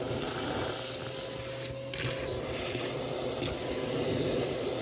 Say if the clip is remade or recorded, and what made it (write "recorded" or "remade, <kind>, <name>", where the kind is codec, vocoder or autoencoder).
recorded